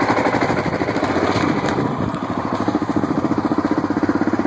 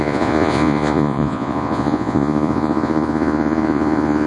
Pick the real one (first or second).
first